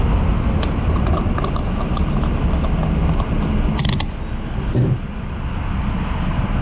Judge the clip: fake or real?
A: real